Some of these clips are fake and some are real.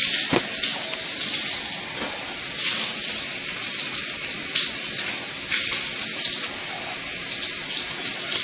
real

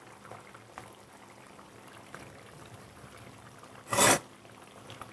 fake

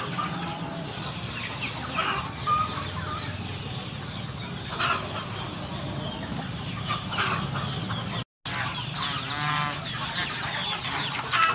real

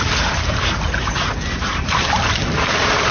fake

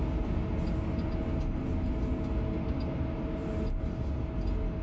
real